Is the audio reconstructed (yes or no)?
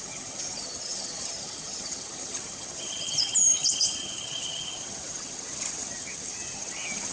yes